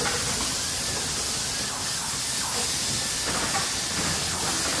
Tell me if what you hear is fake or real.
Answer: real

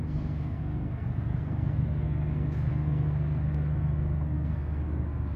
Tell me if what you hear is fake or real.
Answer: fake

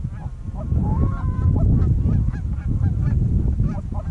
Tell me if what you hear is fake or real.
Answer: real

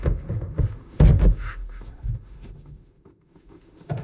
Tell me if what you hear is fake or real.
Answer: fake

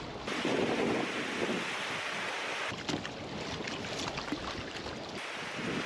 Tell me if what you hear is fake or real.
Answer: real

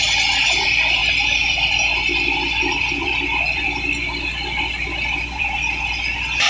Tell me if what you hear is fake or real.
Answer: fake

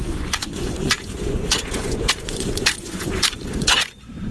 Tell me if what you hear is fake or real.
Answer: fake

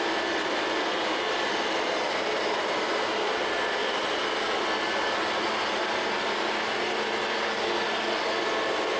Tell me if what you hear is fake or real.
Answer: real